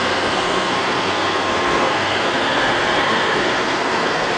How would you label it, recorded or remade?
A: remade